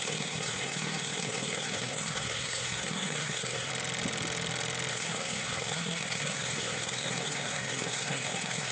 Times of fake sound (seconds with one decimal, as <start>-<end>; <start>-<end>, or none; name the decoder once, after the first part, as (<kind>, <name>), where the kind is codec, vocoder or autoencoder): 0.0-3.7 (codec, SNAC); 4.9-8.7